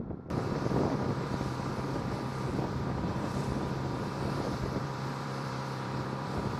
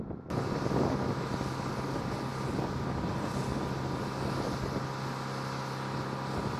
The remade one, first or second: first